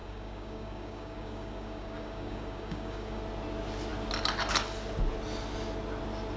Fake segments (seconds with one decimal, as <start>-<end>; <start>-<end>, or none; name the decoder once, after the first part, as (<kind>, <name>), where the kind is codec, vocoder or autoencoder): 0.0-3.2 (codec, DAC)